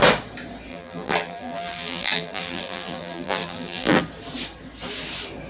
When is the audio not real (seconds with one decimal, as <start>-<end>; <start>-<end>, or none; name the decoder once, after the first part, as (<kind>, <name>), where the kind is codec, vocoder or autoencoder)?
0.7-4.0 (vocoder, BigVGAN v2)